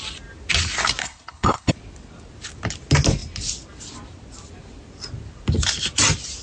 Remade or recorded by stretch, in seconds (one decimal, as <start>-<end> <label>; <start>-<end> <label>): 0.0-1.0 recorded; 1.0-1.7 remade; 1.7-6.4 recorded